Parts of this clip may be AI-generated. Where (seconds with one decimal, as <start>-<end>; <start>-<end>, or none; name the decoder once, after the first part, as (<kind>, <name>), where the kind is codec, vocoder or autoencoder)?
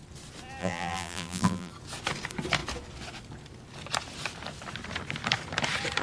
0.6-1.7 (vocoder, BigVGAN v2)